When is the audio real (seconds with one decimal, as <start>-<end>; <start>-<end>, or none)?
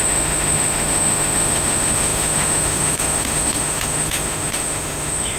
none